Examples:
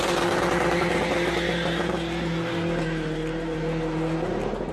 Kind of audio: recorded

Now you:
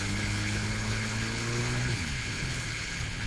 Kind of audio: remade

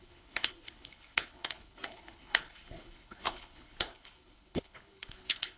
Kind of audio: remade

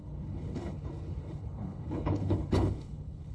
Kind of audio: remade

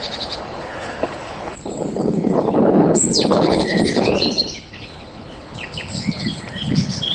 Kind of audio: remade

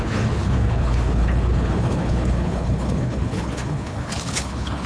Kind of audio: remade